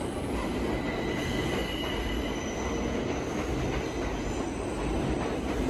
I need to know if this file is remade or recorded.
recorded